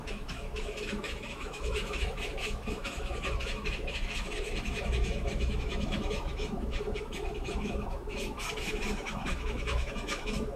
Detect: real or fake fake